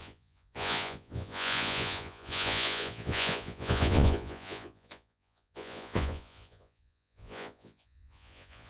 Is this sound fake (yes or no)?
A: yes